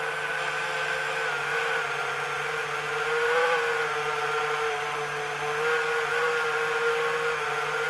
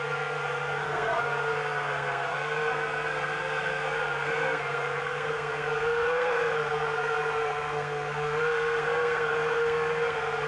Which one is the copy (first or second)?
second